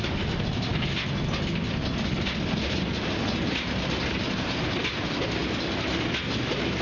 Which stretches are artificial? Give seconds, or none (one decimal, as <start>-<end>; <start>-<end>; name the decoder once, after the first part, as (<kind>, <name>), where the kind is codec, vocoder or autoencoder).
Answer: none